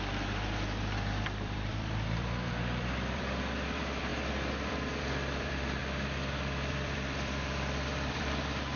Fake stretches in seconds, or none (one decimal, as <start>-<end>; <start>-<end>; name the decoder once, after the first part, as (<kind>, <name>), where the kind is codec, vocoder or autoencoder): 0.0-4.1 (vocoder, BigVGAN v2); 4.7-5.8; 6.7-8.8